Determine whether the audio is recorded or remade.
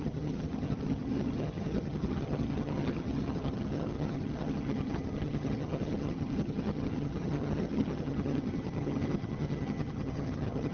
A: remade